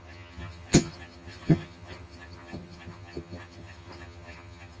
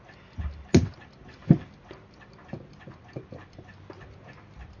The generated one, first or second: first